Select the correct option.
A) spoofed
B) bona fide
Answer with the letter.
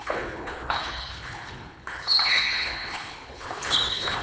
A